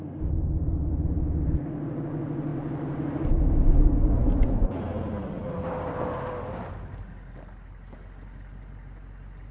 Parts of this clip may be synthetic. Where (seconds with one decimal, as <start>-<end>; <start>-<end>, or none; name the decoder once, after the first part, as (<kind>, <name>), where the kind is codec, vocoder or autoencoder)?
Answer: none